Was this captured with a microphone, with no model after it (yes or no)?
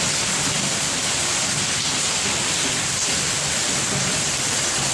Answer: yes